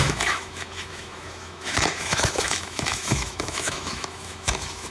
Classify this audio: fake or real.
fake